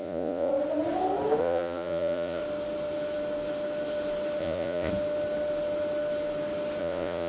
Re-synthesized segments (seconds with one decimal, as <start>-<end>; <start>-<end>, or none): 0.0-0.5; 1.4-2.4; 4.4-4.9; 6.8-7.3